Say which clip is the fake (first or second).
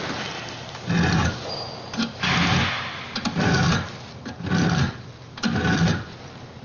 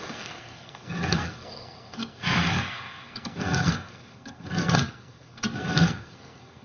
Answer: second